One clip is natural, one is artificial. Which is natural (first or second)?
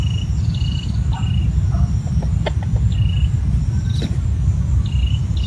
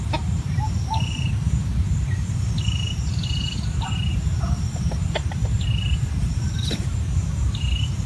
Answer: first